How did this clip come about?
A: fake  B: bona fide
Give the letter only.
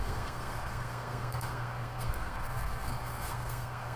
A